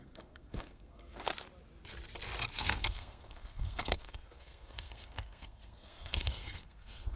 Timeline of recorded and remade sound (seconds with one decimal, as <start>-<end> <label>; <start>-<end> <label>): 0.0-1.3 remade; 1.3-2.5 recorded; 2.5-7.2 remade